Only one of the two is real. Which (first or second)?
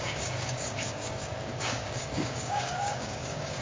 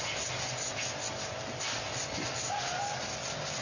second